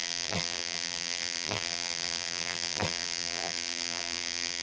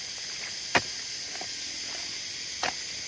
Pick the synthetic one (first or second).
first